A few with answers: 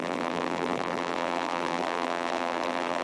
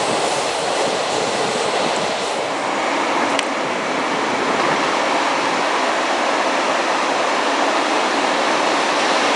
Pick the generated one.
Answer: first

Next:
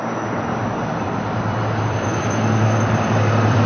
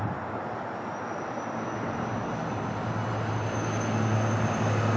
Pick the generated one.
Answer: first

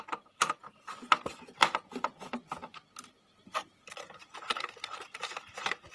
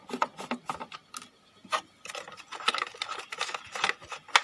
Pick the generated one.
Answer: first